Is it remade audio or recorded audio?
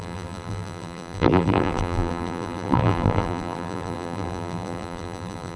remade